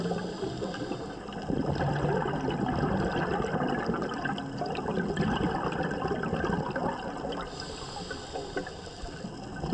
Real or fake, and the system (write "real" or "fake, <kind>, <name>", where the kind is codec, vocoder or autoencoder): real